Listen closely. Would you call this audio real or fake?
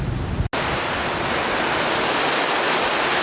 real